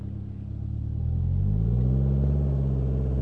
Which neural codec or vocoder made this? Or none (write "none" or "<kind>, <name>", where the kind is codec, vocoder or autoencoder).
none